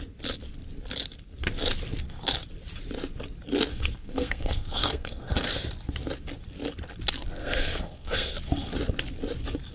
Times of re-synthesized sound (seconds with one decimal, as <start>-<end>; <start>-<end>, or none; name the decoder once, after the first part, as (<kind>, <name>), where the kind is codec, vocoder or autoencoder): 3.7-5.5 (codec, SNAC); 7.4-8.3